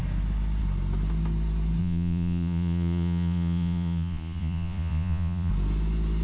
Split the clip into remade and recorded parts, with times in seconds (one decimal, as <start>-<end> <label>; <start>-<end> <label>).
0.0-1.8 recorded; 1.8-5.5 remade; 5.5-6.2 recorded